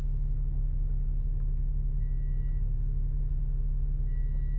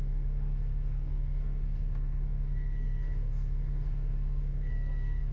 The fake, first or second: second